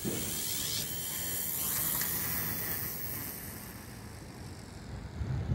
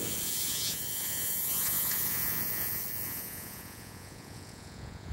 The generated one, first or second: second